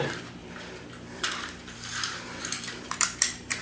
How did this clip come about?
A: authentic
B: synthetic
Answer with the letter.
B